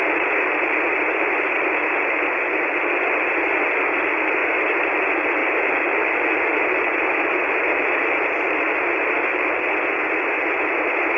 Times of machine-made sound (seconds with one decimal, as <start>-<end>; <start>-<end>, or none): 5.4-8.3